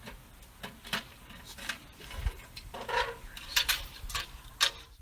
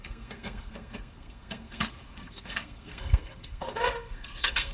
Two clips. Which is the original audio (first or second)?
first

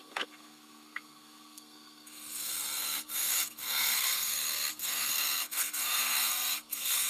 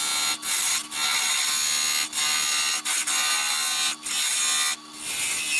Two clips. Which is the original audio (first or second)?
second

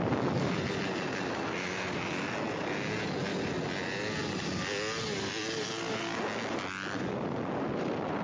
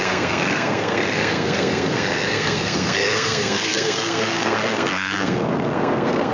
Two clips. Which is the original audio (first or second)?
first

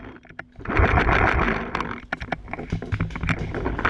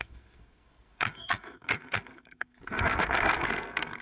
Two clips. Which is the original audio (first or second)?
first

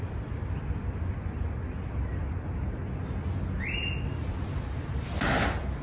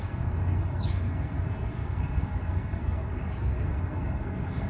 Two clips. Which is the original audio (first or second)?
first